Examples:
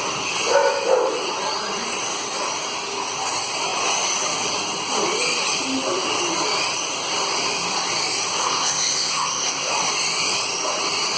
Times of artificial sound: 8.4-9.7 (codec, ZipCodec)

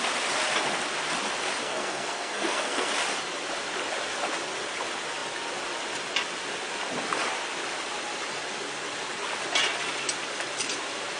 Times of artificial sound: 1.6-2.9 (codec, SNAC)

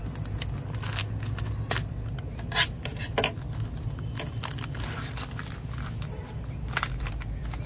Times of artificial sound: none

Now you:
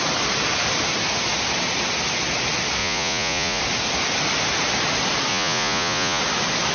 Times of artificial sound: 2.8-3.6 (vocoder, Vocos); 5.3-6.2

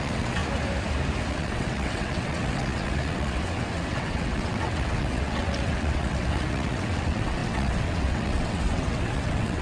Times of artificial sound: 0.0-0.4 (vocoder, WaveNeXt); 1.3-9.6

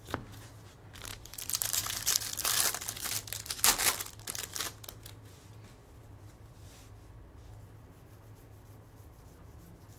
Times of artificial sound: 1.1-2.8 (vocoder, BigVGAN v2); 5.8-7.1

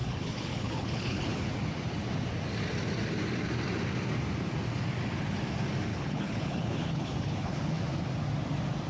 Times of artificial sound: 0.0-1.5 (codec, HILCodec); 5.9-7.8